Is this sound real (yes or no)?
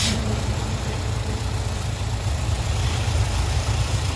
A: no